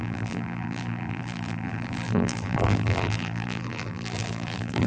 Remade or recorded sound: remade